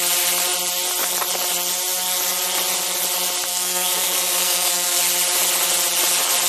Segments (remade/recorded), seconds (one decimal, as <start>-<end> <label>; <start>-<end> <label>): 0.0-3.5 recorded; 3.5-5.0 remade; 5.0-6.5 recorded